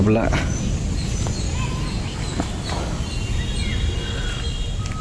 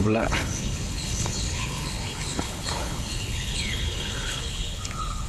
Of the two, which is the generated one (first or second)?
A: second